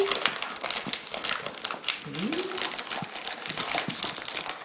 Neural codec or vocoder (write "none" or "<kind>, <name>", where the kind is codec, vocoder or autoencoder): none